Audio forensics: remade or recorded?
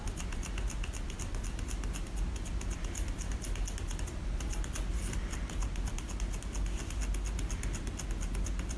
recorded